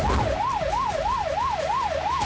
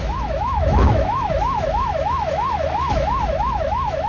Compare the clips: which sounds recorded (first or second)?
first